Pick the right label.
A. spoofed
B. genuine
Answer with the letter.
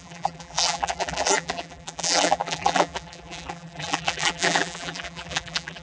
A